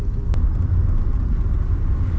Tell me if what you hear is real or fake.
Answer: real